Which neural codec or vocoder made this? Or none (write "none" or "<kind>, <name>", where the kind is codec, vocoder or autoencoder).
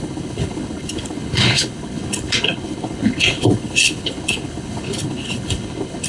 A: codec, HILCodec